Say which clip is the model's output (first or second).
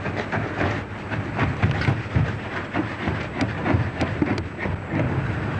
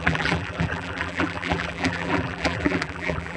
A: second